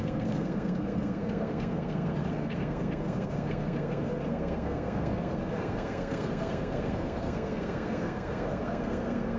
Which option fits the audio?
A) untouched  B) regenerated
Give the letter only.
B